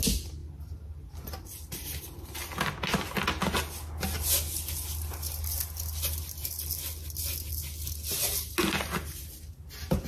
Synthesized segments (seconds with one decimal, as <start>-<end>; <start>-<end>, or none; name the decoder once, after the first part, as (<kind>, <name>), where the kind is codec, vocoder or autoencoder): none